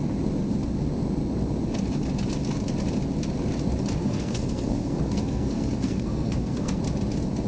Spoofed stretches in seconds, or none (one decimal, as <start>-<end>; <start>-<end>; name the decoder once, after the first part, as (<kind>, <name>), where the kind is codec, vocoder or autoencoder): 4.0-6.8 (codec, SNAC)